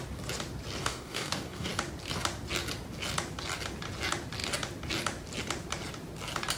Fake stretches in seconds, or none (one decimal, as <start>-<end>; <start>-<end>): 0.8-1.7